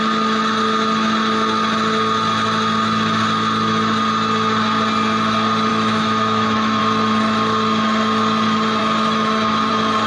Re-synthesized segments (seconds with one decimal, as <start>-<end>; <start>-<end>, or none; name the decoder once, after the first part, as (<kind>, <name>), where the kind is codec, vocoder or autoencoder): 5.7-6.8 (autoencoder, DAC-VAE); 8.8-9.7